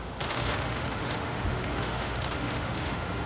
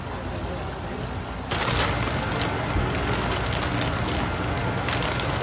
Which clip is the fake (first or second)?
first